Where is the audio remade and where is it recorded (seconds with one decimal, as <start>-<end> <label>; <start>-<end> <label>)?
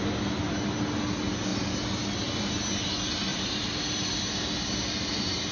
0.0-1.5 recorded; 1.5-2.1 remade; 2.1-3.3 recorded; 3.3-4.2 remade; 4.2-5.5 recorded